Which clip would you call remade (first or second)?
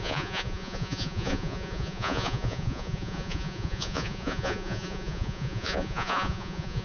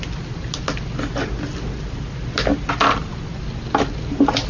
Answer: first